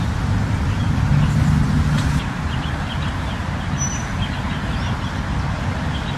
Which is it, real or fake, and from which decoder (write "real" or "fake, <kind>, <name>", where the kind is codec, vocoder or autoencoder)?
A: real